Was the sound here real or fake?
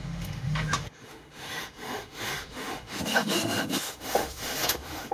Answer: fake